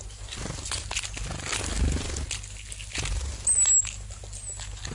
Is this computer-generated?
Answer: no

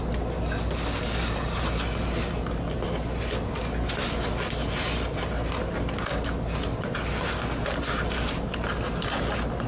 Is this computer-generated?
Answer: no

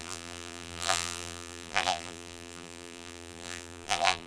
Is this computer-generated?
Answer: yes